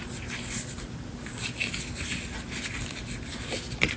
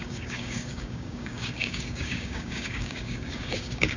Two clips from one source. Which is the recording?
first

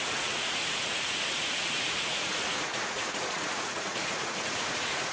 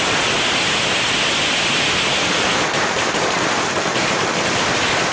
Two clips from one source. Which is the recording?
second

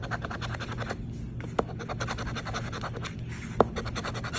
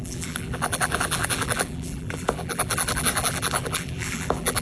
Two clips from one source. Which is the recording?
first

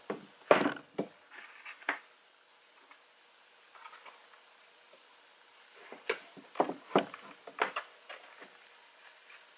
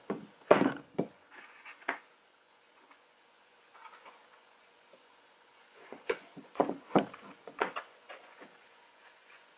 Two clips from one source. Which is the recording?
first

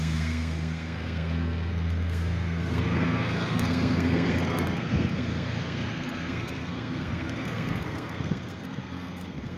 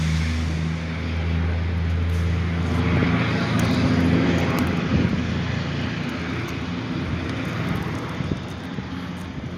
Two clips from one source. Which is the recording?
second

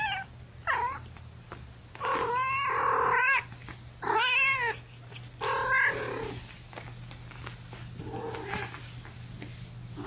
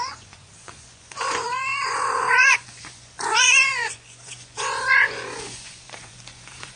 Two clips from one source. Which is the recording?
first